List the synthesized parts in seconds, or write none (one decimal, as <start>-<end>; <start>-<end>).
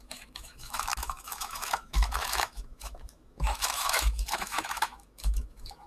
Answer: 0.0-5.9